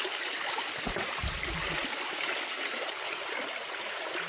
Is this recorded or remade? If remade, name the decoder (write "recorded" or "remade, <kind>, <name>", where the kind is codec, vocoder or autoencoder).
recorded